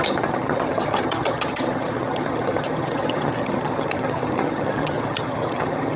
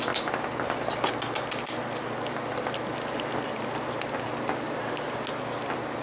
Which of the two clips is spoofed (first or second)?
first